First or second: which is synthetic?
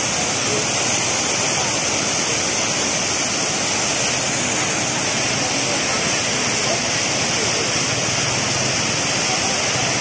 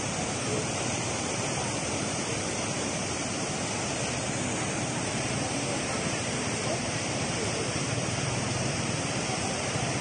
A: second